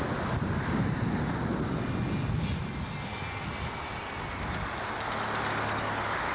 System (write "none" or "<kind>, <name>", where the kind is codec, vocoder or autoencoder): none